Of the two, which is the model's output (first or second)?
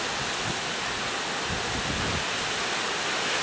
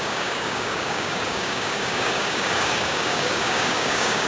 second